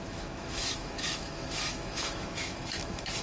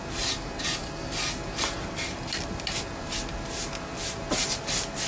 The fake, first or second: first